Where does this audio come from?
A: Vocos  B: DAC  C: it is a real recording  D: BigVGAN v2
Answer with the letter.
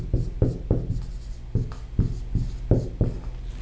C